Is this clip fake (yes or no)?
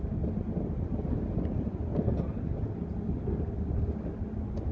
no